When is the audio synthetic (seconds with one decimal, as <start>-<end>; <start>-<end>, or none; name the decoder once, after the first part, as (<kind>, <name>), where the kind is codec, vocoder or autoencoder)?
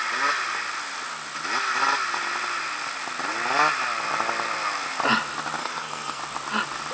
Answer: 5.6-6.2 (codec, SNAC)